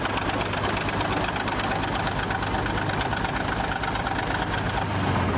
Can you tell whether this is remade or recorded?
recorded